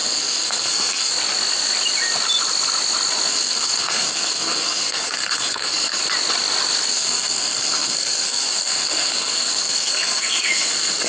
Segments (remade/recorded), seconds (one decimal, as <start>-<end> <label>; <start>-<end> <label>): 0.0-1.1 remade; 1.1-3.3 recorded; 3.3-6.0 remade; 6.0-6.9 recorded; 6.9-11.1 remade